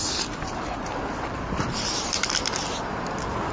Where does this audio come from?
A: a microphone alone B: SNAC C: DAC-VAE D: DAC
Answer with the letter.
A